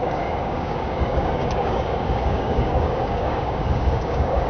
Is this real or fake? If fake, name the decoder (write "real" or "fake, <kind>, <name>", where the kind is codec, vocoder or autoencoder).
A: fake, codec, DAC